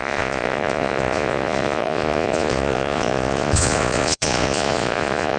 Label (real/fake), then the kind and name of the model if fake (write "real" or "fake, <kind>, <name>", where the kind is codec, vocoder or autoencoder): fake, vocoder, Vocos